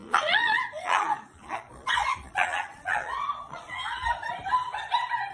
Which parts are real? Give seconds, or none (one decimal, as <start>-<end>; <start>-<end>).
4.0-5.3